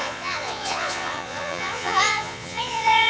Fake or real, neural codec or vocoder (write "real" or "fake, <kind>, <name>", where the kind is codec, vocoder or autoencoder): fake, vocoder, Vocos